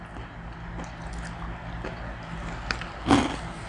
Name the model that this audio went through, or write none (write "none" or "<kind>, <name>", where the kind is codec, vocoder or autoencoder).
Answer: none